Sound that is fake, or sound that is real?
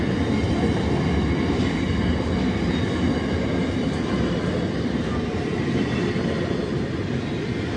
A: real